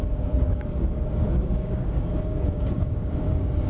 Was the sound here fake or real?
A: fake